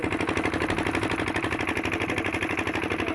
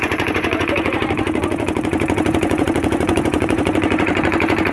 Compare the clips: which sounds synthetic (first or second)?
second